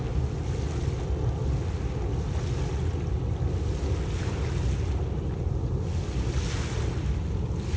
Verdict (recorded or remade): recorded